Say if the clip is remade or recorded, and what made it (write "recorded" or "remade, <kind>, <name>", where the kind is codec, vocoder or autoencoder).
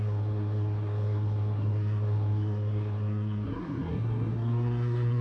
remade, codec, SNAC